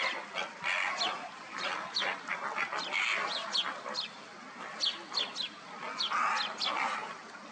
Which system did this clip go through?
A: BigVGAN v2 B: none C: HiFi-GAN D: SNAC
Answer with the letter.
B